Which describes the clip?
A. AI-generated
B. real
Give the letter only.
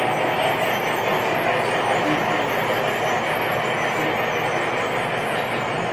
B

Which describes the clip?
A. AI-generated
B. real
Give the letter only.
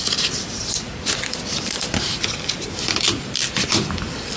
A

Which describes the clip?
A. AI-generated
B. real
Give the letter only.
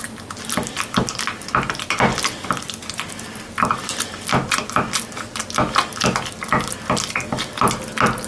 B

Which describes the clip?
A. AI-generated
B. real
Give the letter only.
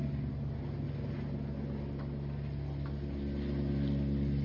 B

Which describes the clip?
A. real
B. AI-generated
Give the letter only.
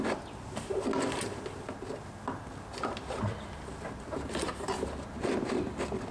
A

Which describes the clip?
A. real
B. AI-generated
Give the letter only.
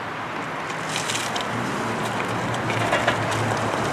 A